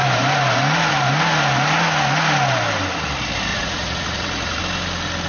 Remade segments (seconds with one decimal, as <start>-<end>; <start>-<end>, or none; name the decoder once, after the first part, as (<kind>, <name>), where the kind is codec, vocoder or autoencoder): 3.5-4.6 (vocoder, Vocos)